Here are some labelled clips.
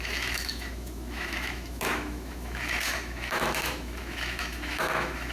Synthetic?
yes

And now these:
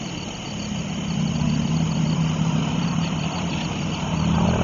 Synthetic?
no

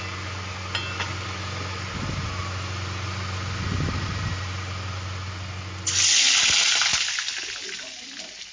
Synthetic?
no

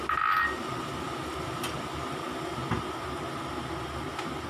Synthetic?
no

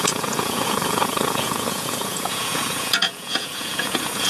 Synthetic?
yes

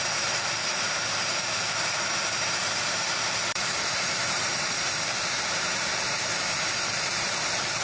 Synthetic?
yes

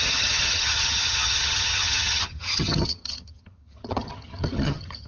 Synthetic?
yes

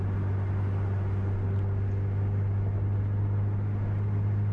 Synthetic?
no